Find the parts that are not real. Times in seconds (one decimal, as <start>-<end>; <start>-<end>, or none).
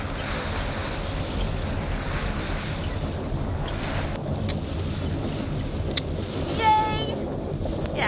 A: none